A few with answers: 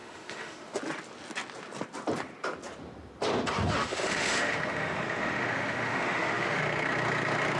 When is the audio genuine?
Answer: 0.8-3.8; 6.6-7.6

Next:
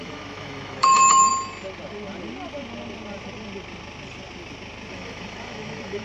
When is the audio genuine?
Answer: 1.3-4.9

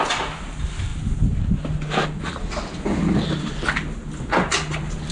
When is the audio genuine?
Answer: 0.0-5.1

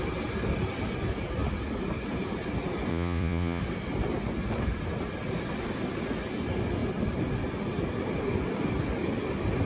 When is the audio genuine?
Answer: 0.0-2.9; 3.6-9.6

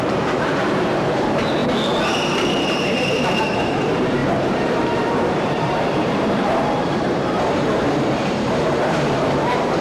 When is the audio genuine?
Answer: 1.6-2.1